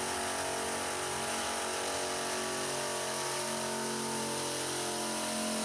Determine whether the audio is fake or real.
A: real